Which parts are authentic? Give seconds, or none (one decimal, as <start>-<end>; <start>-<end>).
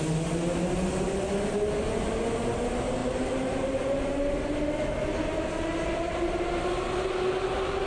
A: 0.0-7.9